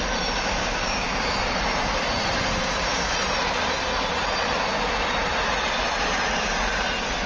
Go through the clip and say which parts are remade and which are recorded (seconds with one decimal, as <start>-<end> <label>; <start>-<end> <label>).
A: 0.0-0.6 recorded; 0.6-1.3 remade; 1.3-7.3 recorded